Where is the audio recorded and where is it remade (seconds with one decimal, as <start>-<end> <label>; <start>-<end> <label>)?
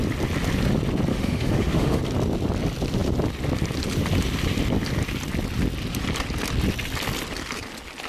0.0-1.1 recorded; 1.1-2.0 remade; 2.0-8.1 recorded